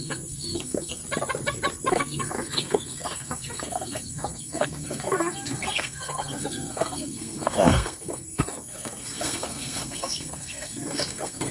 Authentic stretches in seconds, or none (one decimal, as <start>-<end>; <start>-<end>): 1.0-1.9